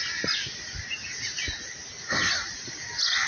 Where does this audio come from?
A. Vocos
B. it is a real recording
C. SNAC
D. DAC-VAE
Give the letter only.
B